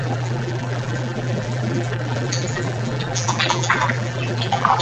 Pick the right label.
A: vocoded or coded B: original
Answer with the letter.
A